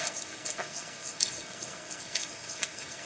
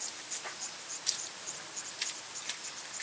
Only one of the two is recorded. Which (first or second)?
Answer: second